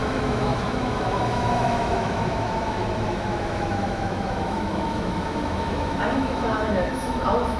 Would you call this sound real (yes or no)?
no